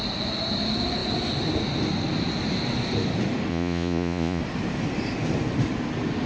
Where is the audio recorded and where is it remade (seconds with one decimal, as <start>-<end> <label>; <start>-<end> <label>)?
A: 0.0-3.5 recorded; 3.5-4.4 remade; 4.4-6.3 recorded